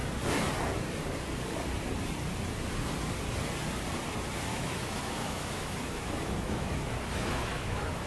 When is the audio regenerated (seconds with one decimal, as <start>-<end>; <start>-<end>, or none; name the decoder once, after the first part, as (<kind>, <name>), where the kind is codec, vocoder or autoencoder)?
4.5-8.1 (autoencoder, DAC-VAE)